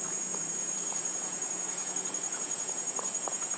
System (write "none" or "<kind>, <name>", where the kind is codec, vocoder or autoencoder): vocoder, Vocos